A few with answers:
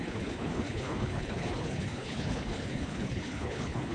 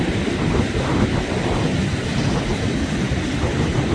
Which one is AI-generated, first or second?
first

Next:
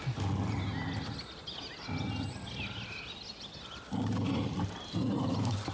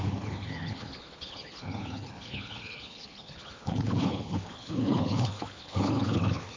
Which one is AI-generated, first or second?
second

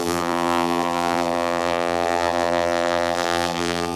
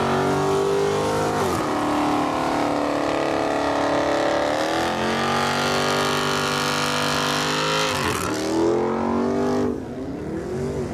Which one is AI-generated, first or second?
first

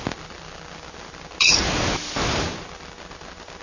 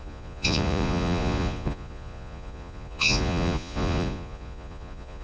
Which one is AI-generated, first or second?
second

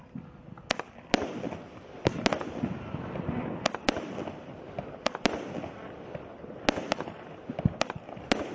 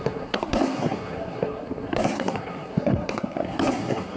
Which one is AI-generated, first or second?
second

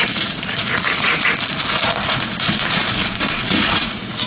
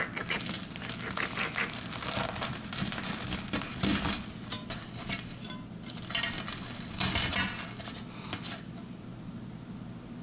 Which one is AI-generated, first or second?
first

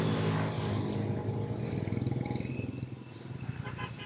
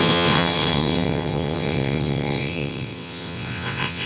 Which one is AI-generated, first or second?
second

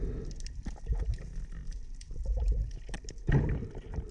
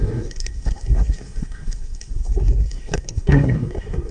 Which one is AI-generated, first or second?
second